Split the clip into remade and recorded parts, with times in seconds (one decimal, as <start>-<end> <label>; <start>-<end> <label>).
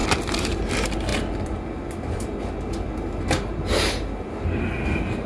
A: 0.0-0.7 remade; 0.7-5.3 recorded